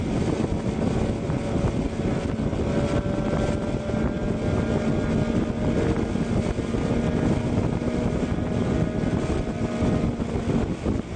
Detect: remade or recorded recorded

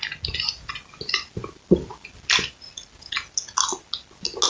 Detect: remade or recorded recorded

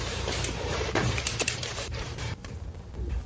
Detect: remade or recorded remade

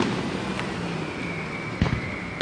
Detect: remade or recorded recorded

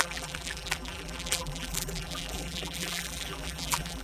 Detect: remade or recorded remade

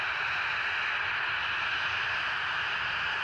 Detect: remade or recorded recorded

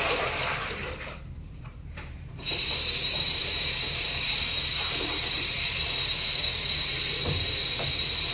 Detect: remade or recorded remade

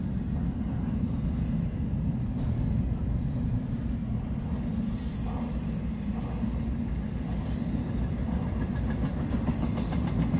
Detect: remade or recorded recorded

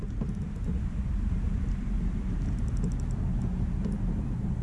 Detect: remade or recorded recorded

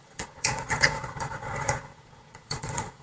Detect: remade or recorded remade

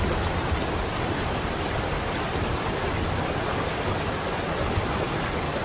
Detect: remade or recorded recorded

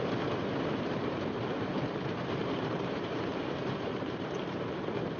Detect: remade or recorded remade